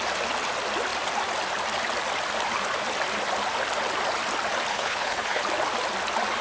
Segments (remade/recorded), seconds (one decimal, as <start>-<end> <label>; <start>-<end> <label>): 0.0-4.7 recorded; 4.7-5.4 remade; 5.4-6.4 recorded